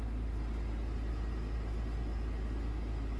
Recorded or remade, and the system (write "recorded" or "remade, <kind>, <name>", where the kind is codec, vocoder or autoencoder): recorded